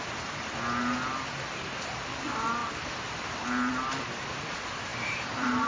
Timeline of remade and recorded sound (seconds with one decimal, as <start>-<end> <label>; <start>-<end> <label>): 0.0-2.6 recorded; 2.6-3.7 remade; 3.7-4.9 recorded; 4.9-5.7 remade